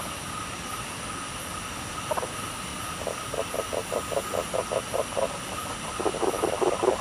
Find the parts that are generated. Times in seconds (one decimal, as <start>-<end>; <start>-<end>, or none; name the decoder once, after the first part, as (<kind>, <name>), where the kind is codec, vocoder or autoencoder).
none